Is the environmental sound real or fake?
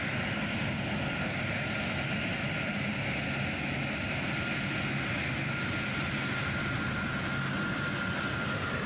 real